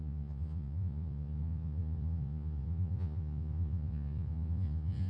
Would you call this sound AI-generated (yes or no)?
yes